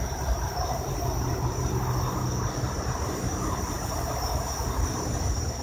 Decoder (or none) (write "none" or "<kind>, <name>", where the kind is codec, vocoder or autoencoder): vocoder, BigVGAN v2